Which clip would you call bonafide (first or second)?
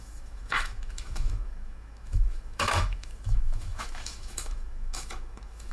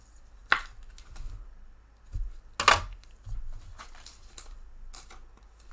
second